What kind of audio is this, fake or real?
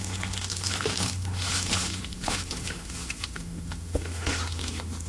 fake